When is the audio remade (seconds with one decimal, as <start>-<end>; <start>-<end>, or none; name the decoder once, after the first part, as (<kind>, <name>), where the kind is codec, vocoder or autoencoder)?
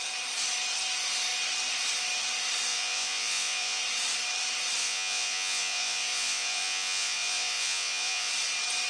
2.7-3.8 (vocoder, Vocos); 4.8-8.3